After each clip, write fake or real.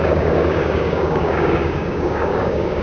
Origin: fake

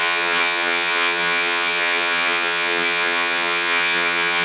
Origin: fake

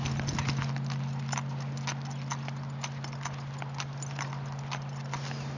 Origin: real